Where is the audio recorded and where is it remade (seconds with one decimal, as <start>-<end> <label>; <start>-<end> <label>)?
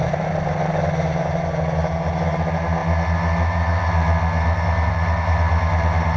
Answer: 0.0-6.2 recorded